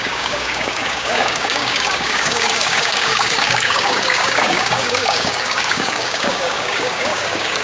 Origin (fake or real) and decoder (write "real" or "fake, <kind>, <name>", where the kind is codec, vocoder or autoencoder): fake, codec, DAC